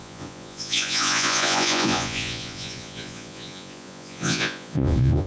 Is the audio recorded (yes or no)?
no